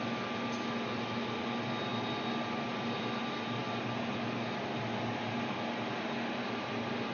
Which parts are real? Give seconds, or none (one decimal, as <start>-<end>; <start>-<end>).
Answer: 0.0-7.1